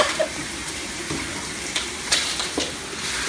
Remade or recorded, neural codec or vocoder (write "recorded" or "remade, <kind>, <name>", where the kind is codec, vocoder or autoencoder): remade, vocoder, BigVGAN v2